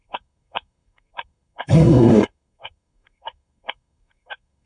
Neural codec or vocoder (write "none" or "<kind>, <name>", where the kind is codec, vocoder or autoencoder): codec, SNAC